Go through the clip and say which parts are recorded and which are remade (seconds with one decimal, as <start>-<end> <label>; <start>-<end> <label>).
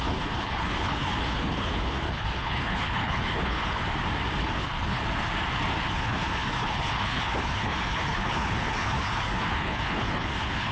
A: 0.0-3.8 remade; 3.8-4.4 recorded; 4.4-5.0 remade; 5.0-5.9 recorded; 5.9-10.7 remade